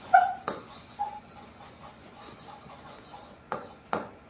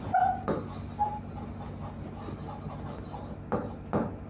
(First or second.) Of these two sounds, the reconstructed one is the first